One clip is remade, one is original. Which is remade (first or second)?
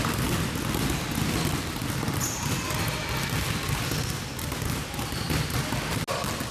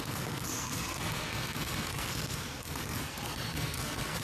second